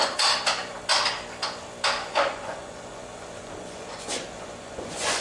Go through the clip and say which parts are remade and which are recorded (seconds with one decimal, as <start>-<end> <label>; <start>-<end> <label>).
0.0-2.1 recorded; 2.1-5.2 remade